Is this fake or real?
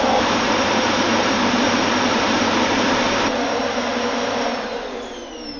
fake